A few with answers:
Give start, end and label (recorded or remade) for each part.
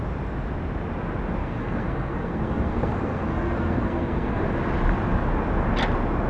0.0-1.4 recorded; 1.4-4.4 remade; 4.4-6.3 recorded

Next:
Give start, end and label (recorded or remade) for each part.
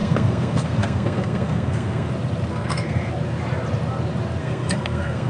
0.0-2.1 remade; 2.1-2.5 recorded; 2.5-3.1 remade; 3.1-4.4 recorded; 4.4-5.3 remade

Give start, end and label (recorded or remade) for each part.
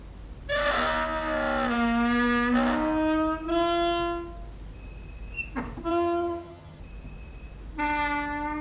0.0-5.9 recorded; 5.9-6.8 remade; 6.8-8.6 recorded